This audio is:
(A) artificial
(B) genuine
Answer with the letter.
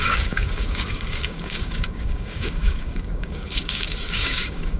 A